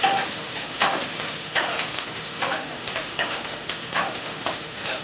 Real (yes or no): no